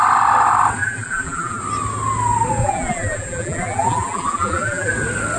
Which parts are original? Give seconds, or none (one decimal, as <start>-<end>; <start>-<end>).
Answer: 0.0-0.8; 1.6-2.6; 4.9-5.4